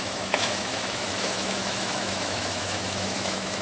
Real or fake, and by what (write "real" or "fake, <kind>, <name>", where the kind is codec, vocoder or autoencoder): fake, autoencoder, DAC-VAE